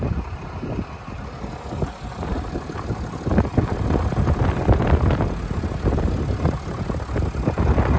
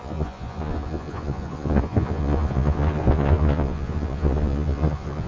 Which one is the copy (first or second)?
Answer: second